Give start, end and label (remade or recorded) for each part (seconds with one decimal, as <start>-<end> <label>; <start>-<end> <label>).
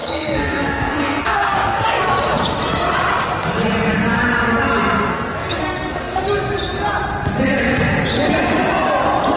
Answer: 0.0-2.0 remade; 2.0-5.1 recorded; 5.1-6.2 remade; 6.2-9.4 recorded